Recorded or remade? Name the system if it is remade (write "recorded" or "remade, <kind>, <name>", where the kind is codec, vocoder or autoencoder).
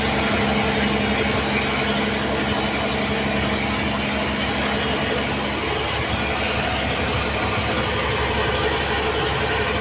recorded